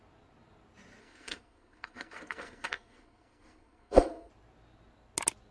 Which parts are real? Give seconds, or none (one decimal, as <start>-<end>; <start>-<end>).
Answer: 0.0-1.0; 4.3-5.5